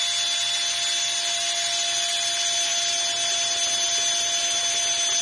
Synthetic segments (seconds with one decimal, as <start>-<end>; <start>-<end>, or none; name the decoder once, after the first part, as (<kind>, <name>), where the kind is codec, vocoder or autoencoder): none